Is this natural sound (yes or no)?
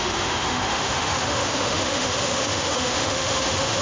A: no